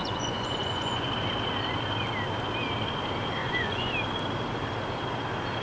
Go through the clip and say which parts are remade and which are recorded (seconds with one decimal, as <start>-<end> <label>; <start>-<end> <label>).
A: 0.0-1.1 remade; 1.1-3.4 recorded; 3.4-3.9 remade; 3.9-5.6 recorded